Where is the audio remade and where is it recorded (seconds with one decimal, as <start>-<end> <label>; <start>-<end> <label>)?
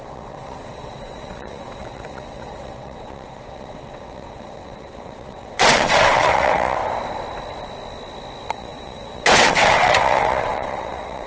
0.0-6.8 remade; 6.8-8.5 recorded; 8.5-11.3 remade